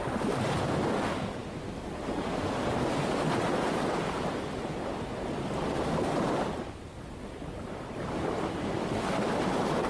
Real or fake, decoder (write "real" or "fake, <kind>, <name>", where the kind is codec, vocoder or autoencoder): real